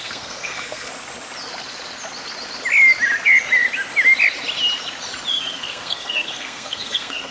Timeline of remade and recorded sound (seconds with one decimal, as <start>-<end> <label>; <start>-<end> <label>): 0.0-0.9 remade; 0.9-5.3 recorded; 5.3-7.3 remade

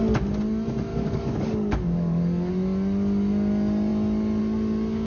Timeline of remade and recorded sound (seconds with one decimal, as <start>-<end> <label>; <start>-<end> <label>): 0.0-0.9 recorded; 0.9-2.5 remade; 2.5-5.1 recorded

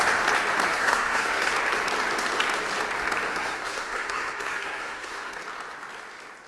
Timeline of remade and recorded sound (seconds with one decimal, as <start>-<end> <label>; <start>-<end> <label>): 0.0-0.7 recorded; 0.7-1.5 remade; 1.5-3.3 recorded; 3.3-5.4 remade; 5.4-6.5 recorded

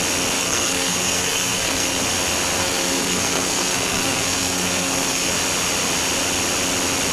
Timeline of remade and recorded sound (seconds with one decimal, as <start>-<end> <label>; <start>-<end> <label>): 0.0-0.4 recorded; 0.4-2.0 remade; 2.0-2.6 recorded; 2.6-5.3 remade; 5.3-7.1 recorded

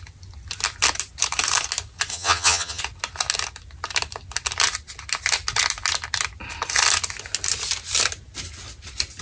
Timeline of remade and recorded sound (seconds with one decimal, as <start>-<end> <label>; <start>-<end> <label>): 0.0-2.1 recorded; 2.1-2.8 remade; 2.8-9.2 recorded

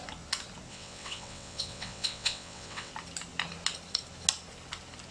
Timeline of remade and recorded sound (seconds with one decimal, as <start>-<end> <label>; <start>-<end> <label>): 0.0-0.7 recorded; 0.7-2.9 remade; 2.9-5.1 recorded

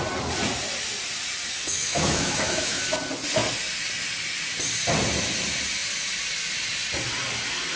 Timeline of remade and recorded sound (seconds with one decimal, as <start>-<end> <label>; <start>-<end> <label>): 0.0-1.6 recorded; 1.6-2.8 remade; 2.8-7.8 recorded